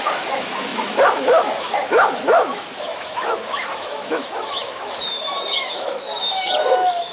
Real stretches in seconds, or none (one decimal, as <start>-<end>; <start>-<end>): none